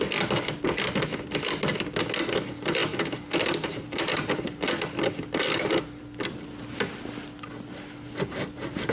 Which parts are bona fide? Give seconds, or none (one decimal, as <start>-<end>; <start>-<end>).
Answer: 0.0-8.9